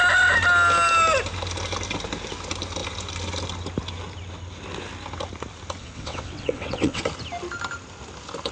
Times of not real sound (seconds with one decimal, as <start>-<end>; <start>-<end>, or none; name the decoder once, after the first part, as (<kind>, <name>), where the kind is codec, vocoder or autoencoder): 5.8-7.0 (vocoder, WaveNeXt)